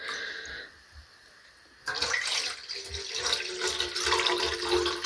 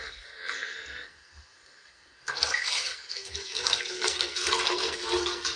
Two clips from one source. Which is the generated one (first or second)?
second